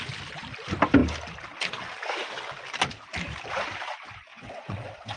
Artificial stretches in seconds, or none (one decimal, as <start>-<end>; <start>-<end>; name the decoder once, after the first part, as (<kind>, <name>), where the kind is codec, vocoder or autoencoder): 4.3-5.2 (vocoder, WaveNeXt)